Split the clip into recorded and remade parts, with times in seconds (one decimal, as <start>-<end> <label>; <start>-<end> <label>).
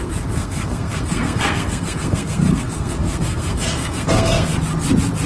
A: 0.0-4.5 remade; 4.5-5.3 recorded